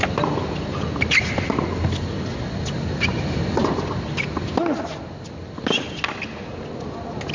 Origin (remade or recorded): recorded